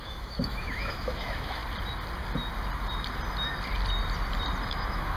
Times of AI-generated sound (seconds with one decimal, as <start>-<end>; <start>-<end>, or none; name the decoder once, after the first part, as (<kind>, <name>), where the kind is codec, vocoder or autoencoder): 0.0-1.6 (autoencoder, DAC-VAE); 4.7-5.2